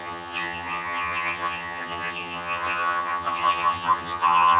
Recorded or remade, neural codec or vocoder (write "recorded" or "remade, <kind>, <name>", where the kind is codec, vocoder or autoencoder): remade, vocoder, HiFi-GAN